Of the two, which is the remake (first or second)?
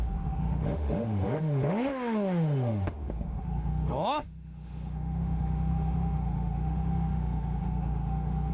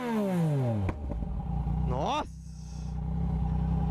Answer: first